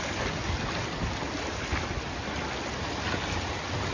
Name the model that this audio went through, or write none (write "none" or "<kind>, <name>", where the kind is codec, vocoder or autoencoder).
none